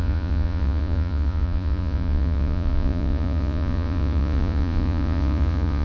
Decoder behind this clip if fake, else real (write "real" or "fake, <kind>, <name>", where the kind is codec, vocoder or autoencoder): fake, vocoder, Vocos